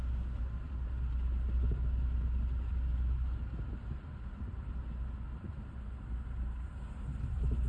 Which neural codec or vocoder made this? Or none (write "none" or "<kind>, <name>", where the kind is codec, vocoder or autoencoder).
none